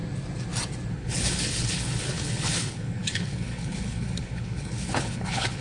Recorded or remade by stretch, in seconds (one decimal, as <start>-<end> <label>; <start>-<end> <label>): 0.0-0.9 recorded; 0.9-5.6 remade